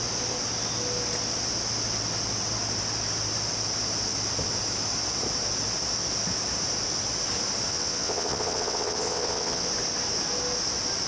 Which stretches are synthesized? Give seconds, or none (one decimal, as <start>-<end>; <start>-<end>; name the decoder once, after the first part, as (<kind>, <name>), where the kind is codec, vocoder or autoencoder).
7.7-9.7 (vocoder, WaveNeXt)